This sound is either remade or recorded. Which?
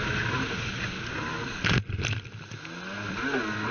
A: recorded